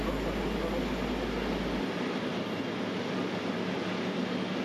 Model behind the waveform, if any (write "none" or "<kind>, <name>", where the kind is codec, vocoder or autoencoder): none